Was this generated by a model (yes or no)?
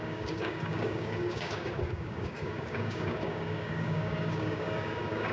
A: yes